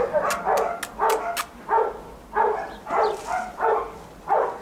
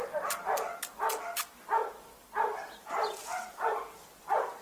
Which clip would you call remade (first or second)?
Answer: second